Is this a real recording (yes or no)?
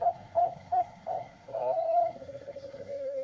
no